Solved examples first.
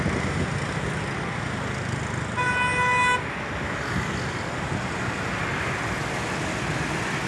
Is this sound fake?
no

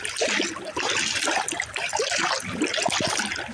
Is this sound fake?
no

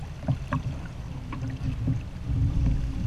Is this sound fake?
no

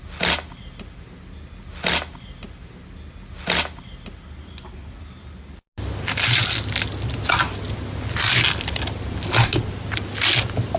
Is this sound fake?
no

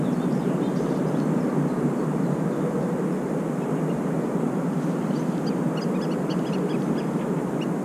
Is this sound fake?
no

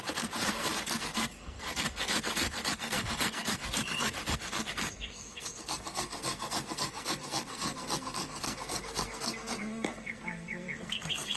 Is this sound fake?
yes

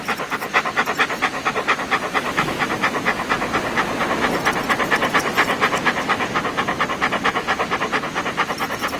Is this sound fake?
no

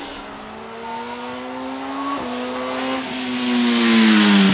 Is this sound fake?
no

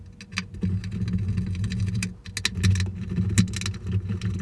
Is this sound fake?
no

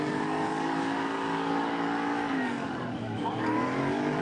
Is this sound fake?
yes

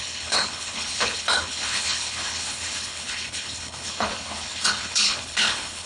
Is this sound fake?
yes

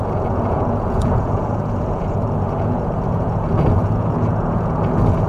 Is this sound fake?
yes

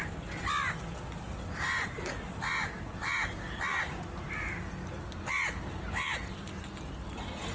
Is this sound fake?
no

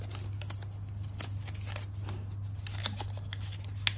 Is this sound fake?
no